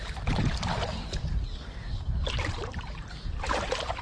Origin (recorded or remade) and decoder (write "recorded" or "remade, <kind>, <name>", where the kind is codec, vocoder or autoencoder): remade, vocoder, BigVGAN v2